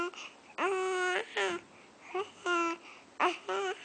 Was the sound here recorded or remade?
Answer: recorded